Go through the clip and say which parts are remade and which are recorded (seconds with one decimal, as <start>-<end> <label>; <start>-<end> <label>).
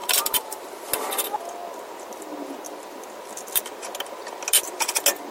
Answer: 0.0-0.7 remade; 0.7-5.3 recorded